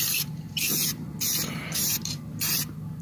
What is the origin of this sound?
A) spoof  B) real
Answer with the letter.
A